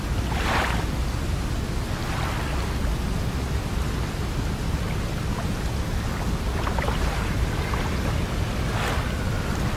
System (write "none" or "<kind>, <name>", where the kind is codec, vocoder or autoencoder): none